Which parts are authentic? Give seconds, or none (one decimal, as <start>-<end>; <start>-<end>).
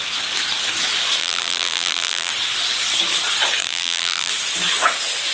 0.0-1.2; 2.3-3.6; 4.3-5.3